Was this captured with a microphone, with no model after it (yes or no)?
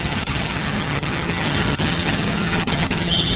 no